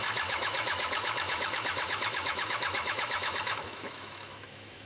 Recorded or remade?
remade